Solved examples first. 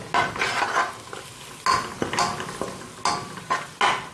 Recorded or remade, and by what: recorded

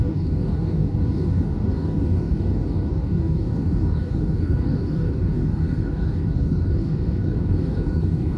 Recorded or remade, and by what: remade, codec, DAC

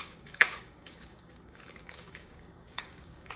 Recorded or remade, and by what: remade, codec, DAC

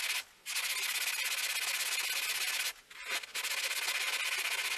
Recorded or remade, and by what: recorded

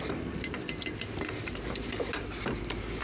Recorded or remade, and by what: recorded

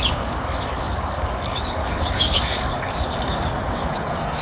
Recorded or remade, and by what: remade, codec, DAC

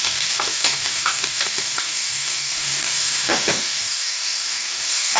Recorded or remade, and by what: remade, codec, DAC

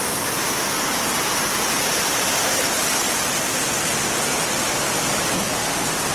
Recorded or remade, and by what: recorded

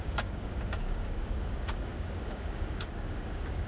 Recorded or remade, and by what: remade, codec, DAC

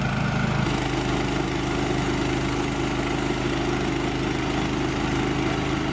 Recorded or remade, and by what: recorded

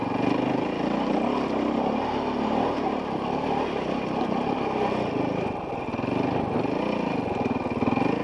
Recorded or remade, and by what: recorded